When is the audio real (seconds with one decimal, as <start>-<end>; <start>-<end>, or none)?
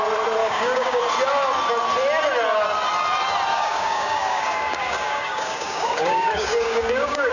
0.0-0.4; 1.0-3.5